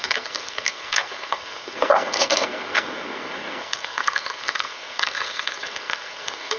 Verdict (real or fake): fake